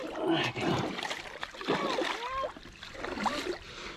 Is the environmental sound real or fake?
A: real